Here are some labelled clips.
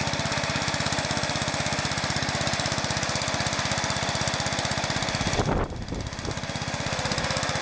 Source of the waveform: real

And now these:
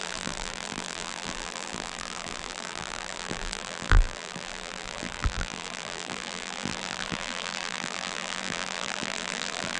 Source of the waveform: fake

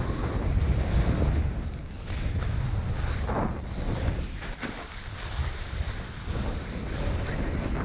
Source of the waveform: real